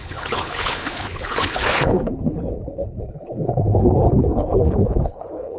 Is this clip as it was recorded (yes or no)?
no